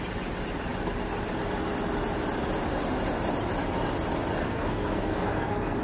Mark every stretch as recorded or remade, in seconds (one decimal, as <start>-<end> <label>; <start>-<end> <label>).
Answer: 0.0-4.4 recorded; 4.4-5.8 remade